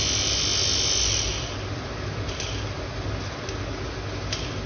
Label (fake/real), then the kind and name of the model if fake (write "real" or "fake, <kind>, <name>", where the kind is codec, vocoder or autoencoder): real